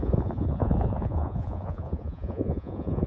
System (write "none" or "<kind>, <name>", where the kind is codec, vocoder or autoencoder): vocoder, Vocos